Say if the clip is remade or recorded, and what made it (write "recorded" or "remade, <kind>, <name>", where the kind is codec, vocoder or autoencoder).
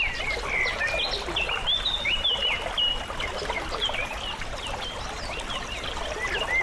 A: recorded